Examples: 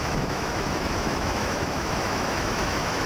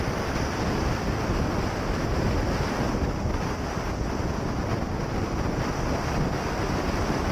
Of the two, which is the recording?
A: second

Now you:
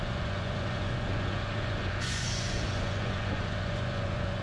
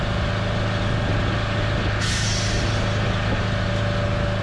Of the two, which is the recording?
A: second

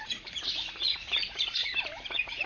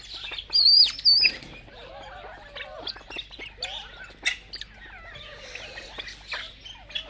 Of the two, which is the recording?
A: second